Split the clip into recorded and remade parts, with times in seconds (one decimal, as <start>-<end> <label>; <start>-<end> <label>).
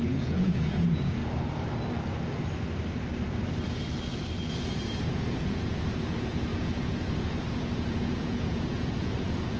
0.0-1.2 remade; 1.2-5.1 recorded; 5.1-9.6 remade